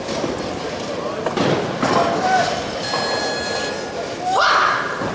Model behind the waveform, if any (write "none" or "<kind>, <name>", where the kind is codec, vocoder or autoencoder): none